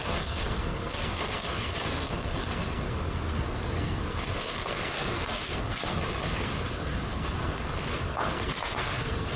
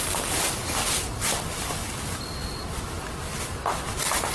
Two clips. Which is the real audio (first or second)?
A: second